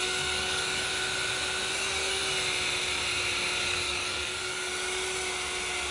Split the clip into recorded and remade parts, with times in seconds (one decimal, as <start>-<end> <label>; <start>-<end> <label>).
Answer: 0.0-0.9 remade; 0.9-1.7 recorded; 1.7-2.2 remade; 2.2-3.6 recorded; 3.6-4.7 remade; 4.7-5.9 recorded